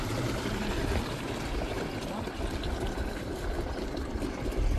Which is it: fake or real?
real